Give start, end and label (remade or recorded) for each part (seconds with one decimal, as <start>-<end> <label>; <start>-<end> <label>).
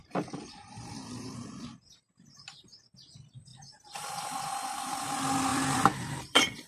0.0-3.5 recorded; 3.5-4.1 remade; 4.1-5.5 recorded; 5.5-6.7 remade